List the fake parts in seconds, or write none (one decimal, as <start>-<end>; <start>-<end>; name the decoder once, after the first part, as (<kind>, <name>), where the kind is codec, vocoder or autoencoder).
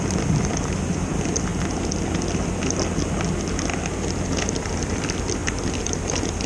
0.0-1.5 (vocoder, BigVGAN v2); 4.8-5.4